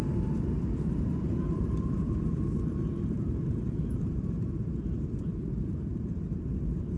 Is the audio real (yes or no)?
no